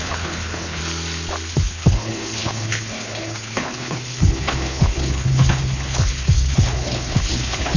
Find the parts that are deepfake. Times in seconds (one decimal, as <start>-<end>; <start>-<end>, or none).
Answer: 0.0-0.8; 1.5-7.8